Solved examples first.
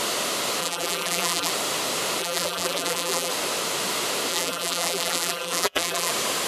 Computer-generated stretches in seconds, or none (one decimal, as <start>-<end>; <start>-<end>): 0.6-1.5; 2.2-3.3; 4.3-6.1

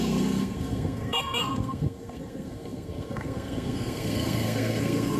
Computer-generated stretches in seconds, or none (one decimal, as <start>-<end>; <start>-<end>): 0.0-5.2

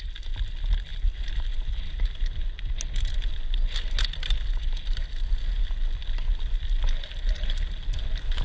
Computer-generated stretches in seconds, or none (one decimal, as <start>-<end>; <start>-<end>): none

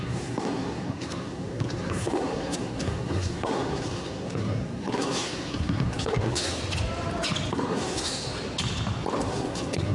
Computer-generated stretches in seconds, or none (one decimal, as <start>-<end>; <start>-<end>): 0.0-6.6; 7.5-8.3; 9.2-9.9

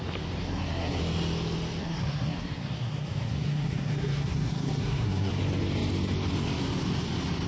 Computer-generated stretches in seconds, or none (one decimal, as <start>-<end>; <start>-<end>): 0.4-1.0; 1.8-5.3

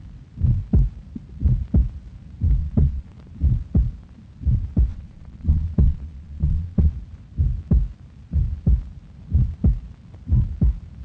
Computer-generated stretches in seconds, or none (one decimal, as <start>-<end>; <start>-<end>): 2.6-3.1; 4.9-6.9

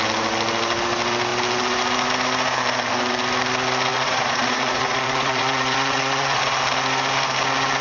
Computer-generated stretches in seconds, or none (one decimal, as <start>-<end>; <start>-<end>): 3.9-6.4

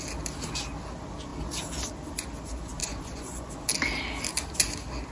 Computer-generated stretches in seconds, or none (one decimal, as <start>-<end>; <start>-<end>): 2.8-3.5